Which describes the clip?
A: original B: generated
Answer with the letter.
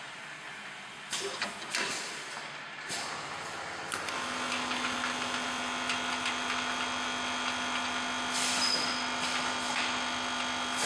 A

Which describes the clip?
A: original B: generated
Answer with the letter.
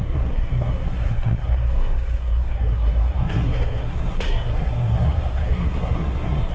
B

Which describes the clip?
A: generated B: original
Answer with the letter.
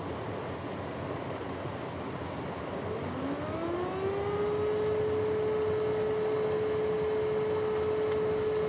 B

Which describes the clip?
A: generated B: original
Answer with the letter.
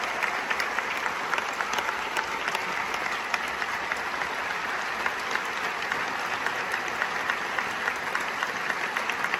B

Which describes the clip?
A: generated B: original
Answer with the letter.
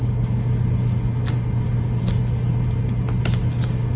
B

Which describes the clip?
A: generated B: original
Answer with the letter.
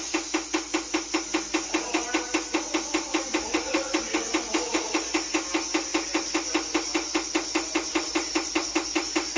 B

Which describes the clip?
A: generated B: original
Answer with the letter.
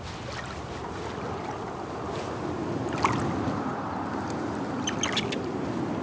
B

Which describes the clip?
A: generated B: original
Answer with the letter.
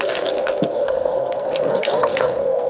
A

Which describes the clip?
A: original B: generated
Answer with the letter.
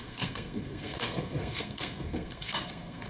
B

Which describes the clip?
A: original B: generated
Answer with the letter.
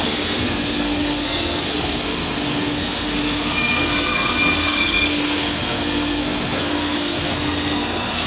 B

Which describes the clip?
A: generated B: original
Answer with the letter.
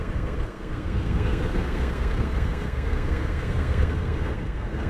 A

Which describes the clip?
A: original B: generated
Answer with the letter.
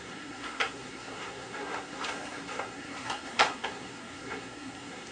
B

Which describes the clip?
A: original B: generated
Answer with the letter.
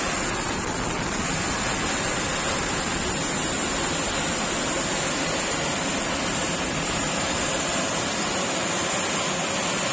A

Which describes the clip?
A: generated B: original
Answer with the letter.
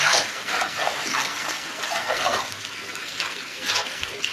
A